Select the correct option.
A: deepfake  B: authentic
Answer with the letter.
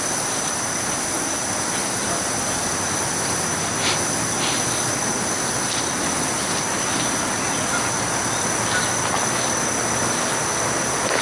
B